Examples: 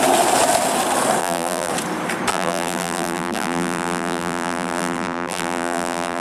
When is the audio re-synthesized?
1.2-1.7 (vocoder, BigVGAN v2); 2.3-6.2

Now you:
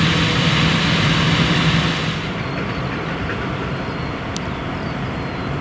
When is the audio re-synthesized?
0.4-3.6 (vocoder, BigVGAN v2)

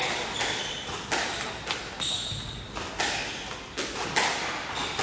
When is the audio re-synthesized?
none

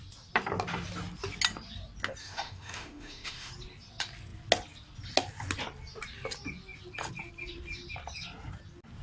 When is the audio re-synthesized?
2.2-3.5 (autoencoder, DAC-VAE)

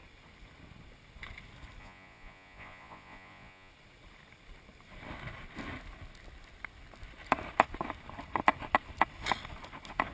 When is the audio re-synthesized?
1.8-3.7 (vocoder, Vocos)

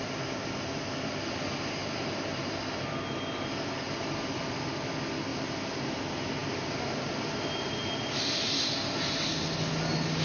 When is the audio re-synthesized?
5.3-5.9 (vocoder, BigVGAN v2); 6.4-7.8

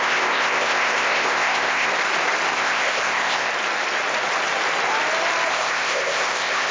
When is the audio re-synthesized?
0.0-1.9 (codec, ZipCodec); 2.5-3.5; 5.5-6.7

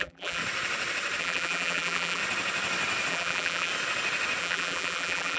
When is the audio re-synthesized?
0.0-0.4 (vocoder, BigVGAN v2); 1.2-2.2; 3.1-3.7; 4.4-5.4